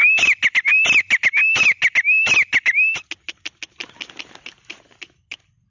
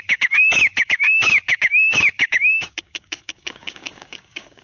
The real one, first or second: first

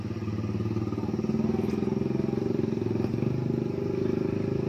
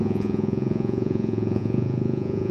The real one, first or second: first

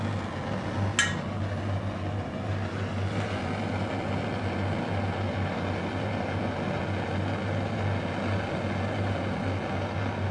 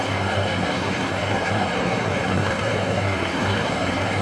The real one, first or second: first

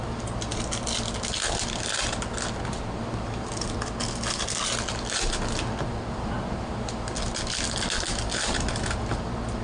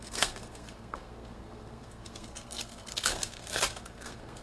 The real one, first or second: first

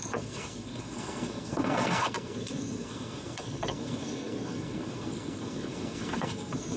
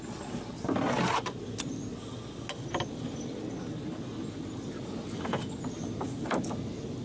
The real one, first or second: second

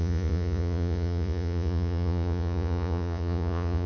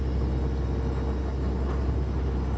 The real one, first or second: second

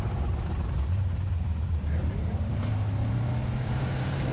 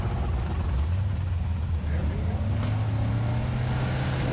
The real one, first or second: second